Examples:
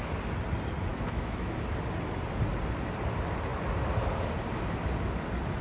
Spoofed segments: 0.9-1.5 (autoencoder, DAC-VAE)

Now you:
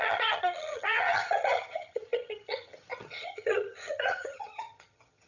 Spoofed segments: 0.0-5.3 (vocoder, HiFi-GAN)

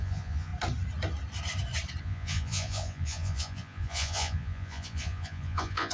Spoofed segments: 0.0-0.5 (vocoder, Vocos); 2.0-5.9

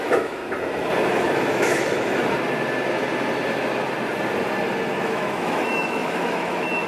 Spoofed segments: 0.0-0.4 (autoencoder, DAC-VAE); 1.1-2.2; 5.0-6.9

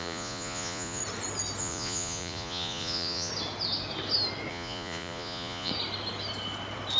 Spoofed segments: 0.0-1.0 (vocoder, Vocos); 1.6-3.3; 4.5-5.7

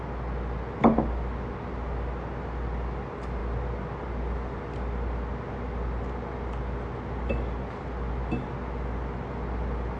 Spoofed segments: none

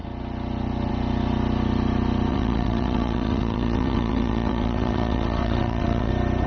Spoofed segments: 2.3-6.1 (vocoder, WaveNeXt)

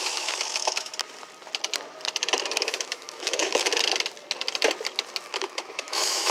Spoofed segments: 0.0-0.9 (autoencoder, DAC-VAE); 2.6-3.7; 5.3-6.3